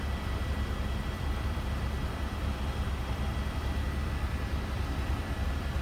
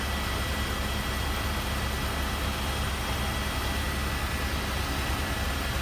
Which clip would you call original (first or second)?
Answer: second